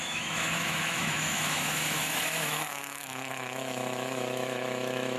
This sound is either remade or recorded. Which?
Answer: remade